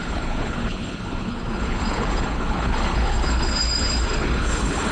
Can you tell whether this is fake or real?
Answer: fake